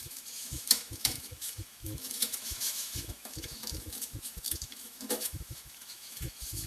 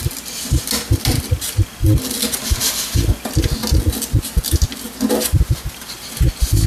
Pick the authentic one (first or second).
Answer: second